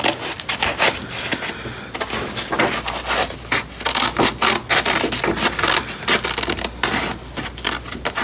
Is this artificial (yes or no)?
no